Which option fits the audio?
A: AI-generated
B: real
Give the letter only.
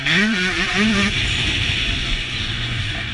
A